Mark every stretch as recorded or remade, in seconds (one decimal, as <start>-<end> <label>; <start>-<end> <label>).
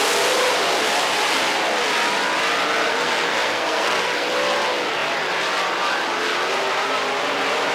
0.0-2.8 recorded; 2.8-4.3 remade; 4.3-7.7 recorded